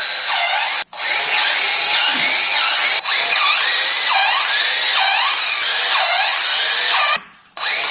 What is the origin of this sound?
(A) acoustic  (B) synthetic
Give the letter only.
A